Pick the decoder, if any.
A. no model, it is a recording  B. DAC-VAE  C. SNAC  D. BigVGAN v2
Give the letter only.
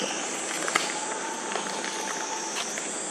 A